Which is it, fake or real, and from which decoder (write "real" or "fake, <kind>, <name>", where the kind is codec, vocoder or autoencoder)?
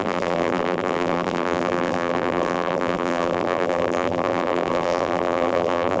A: fake, vocoder, BigVGAN v2